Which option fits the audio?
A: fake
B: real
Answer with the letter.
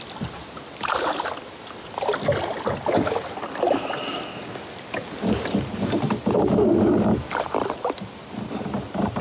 B